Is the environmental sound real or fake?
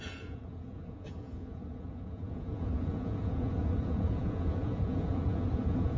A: fake